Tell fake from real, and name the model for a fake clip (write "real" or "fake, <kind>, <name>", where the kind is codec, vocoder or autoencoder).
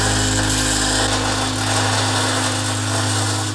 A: real